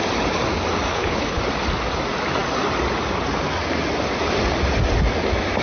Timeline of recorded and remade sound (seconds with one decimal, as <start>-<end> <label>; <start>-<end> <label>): 0.0-0.9 recorded; 0.9-1.4 remade; 1.4-5.6 recorded